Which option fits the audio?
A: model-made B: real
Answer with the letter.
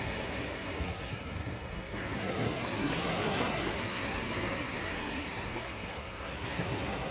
A